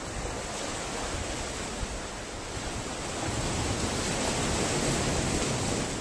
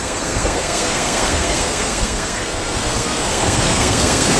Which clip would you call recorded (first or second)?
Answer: first